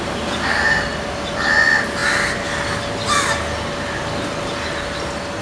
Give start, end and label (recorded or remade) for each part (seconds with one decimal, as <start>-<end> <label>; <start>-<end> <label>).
0.0-5.4 recorded